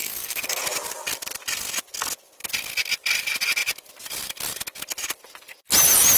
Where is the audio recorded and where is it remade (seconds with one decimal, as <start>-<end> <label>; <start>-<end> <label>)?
0.0-0.6 remade; 0.6-6.2 recorded